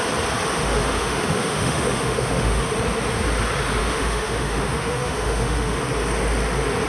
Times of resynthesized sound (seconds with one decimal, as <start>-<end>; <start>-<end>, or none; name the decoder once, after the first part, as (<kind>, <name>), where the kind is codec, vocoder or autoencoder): 0.6-2.6 (autoencoder, DAC-VAE); 3.8-5.8